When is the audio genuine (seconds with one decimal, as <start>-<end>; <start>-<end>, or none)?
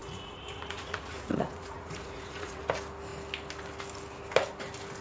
2.6-5.0